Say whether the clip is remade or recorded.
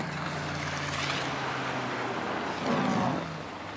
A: recorded